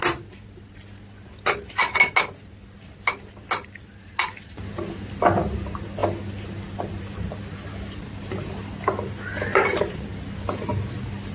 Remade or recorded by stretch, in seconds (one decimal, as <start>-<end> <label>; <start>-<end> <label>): 0.0-9.5 recorded; 9.5-10.1 remade; 10.1-11.3 recorded